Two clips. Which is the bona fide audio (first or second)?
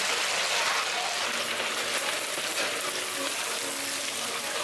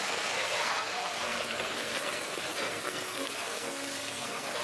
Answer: first